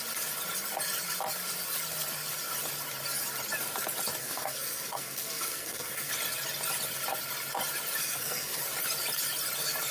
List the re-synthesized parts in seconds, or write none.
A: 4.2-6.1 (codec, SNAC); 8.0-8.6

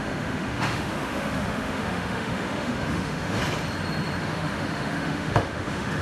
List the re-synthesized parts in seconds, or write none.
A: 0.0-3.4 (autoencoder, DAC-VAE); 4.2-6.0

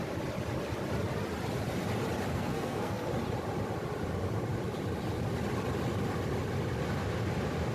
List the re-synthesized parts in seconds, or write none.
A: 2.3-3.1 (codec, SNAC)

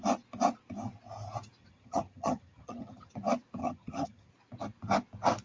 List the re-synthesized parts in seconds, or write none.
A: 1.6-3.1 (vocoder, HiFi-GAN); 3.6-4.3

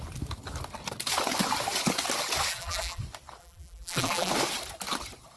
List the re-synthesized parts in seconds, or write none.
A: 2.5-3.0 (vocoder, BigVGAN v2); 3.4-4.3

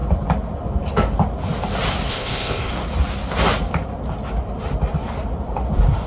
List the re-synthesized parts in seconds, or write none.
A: 2.1-2.7 (codec, ZipCodec)

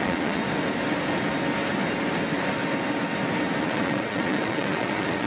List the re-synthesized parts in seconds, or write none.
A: 0.0-0.4 (vocoder, Vocos); 3.6-5.3